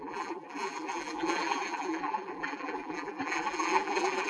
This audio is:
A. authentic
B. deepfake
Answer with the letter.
B